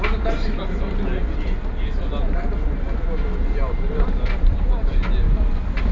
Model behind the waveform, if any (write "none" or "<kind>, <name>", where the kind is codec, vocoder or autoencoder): none